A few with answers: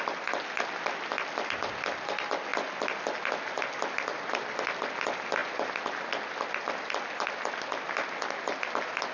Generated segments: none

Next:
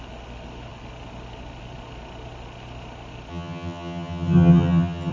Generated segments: 3.3-5.1

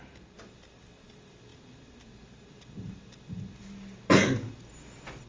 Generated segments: none

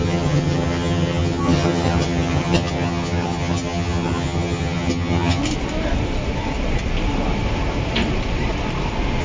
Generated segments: 0.0-5.4

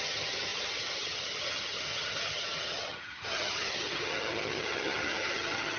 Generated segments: 0.0-5.8

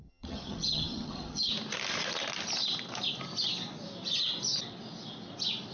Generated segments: 0.0-1.5